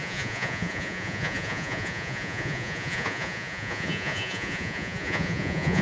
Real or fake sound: fake